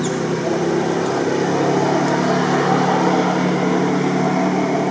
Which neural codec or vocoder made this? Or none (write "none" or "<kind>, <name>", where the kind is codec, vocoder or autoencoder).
none